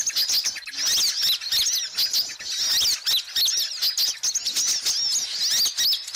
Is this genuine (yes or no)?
yes